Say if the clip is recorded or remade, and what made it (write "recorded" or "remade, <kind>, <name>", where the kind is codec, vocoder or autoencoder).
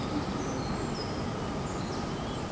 recorded